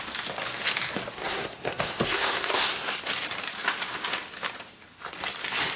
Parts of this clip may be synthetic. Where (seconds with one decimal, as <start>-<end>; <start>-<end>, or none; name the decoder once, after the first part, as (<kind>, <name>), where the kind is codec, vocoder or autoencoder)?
1.2-3.1 (codec, SNAC)